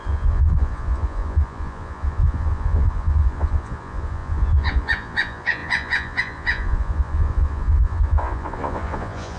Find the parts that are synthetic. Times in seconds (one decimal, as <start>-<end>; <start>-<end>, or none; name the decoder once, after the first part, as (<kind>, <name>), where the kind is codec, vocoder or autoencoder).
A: 0.0-9.4 (vocoder, Vocos)